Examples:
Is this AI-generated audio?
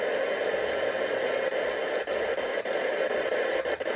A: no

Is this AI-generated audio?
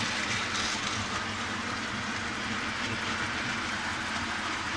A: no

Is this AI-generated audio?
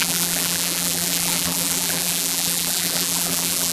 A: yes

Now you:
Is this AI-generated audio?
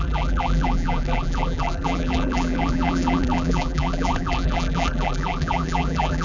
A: yes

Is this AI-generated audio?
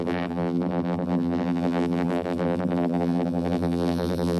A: yes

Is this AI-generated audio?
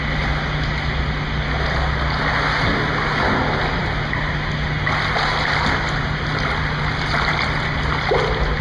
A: no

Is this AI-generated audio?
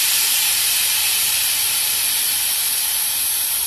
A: yes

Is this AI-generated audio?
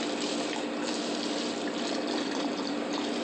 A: no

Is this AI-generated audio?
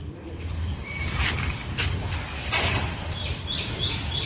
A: yes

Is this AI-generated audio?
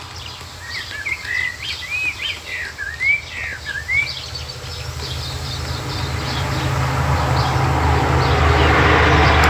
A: no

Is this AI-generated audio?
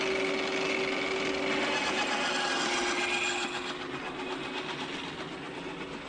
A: no